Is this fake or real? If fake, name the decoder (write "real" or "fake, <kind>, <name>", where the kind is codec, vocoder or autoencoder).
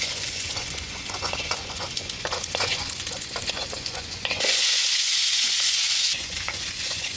fake, vocoder, Vocos